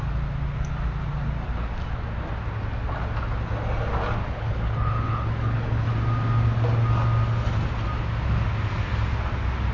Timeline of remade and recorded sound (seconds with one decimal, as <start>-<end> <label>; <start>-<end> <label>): 0.0-4.2 recorded; 4.2-5.9 remade; 5.9-9.7 recorded